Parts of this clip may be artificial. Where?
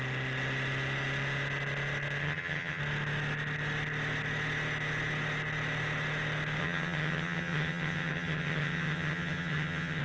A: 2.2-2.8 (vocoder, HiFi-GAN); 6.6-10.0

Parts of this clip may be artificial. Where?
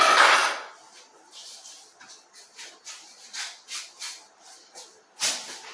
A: none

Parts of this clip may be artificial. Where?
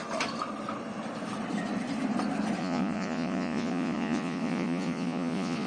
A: 2.6-5.7 (vocoder, Vocos)